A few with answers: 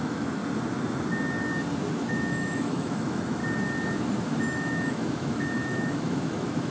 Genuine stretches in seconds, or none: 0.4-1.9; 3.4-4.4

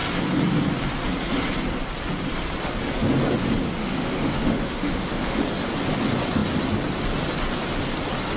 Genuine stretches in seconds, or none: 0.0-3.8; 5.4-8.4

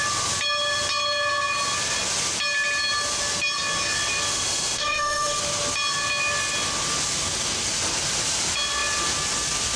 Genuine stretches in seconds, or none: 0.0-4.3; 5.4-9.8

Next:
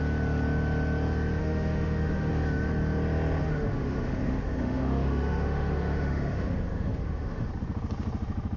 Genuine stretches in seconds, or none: 0.0-1.4; 2.3-3.4; 7.5-8.6

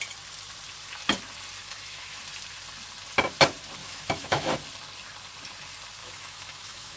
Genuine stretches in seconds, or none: 0.0-1.6; 2.2-3.8; 4.5-6.0